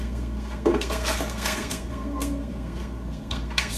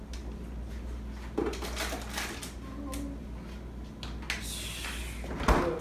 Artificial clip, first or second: first